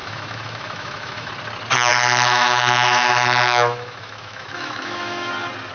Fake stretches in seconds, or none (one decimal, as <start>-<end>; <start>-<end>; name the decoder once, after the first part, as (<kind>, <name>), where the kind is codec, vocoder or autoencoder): 0.0-1.3 (autoencoder, DAC-VAE); 1.9-5.3